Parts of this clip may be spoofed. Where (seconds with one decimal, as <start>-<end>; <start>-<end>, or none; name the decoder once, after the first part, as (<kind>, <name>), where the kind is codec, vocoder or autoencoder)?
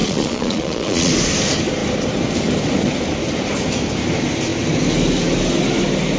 0.0-1.1 (vocoder, Vocos)